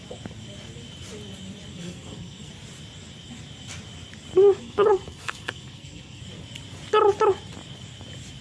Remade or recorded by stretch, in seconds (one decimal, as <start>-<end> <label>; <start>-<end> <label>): 0.0-1.7 recorded; 1.7-2.5 remade; 2.5-4.6 recorded; 4.6-6.2 remade; 6.2-8.4 recorded